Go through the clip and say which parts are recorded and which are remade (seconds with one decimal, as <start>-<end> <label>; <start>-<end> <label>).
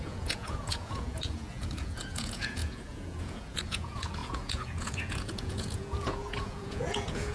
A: 0.0-7.3 remade